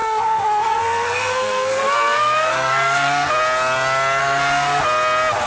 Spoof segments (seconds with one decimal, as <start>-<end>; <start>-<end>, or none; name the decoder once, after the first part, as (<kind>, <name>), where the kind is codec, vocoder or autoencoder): 0.0-3.3 (codec, SNAC); 4.2-4.8